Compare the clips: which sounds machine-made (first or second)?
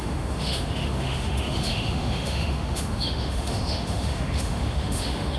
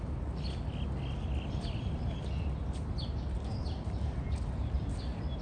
first